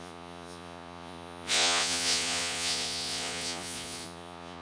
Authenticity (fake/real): fake